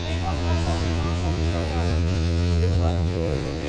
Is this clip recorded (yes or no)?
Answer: no